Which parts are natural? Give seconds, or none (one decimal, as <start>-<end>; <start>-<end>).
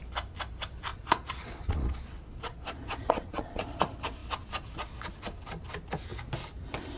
0.0-0.9; 3.8-7.0